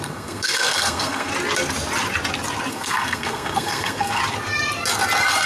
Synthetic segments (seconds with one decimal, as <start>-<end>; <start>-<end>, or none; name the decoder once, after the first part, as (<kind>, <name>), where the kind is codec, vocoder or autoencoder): 0.0-1.3 (codec, SNAC); 2.7-4.2